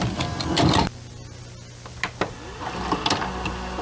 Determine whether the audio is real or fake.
real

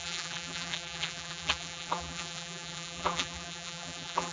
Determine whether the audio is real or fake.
fake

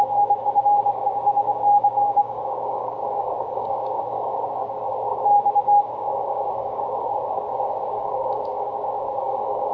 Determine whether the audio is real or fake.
fake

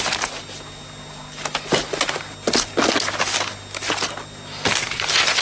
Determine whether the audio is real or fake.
real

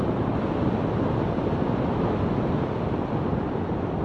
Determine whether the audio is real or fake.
real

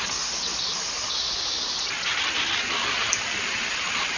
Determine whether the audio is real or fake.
real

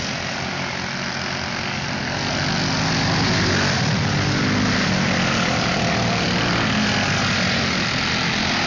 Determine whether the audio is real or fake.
real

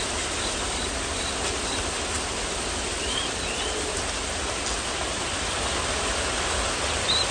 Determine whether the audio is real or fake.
real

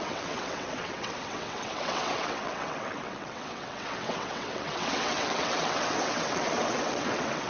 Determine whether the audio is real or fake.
fake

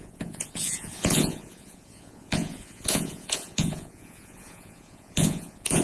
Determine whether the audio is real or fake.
fake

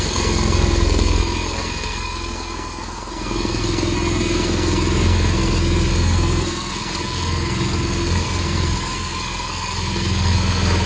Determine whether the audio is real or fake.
fake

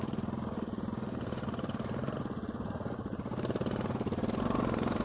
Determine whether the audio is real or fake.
real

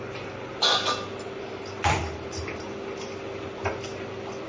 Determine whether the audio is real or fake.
real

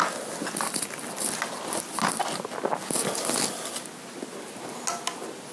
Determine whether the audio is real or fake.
real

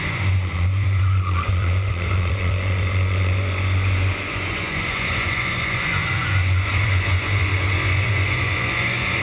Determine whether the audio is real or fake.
fake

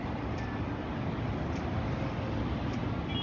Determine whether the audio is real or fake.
real